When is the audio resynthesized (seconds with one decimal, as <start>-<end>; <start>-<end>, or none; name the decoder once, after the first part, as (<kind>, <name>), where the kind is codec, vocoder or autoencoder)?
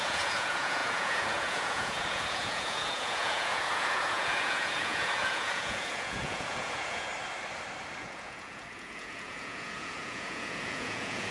0.0-7.1 (vocoder, Vocos); 8.0-11.3